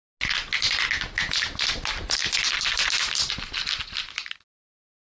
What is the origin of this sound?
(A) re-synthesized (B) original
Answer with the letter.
B